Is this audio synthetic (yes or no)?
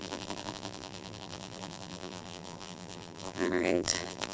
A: yes